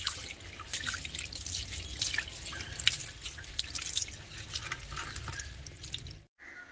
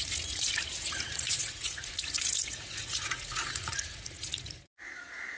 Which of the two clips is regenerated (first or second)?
second